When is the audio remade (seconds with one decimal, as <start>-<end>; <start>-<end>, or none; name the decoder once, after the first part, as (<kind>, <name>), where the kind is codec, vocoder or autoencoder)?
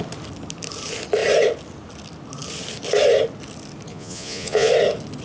3.9-4.7 (vocoder, Vocos)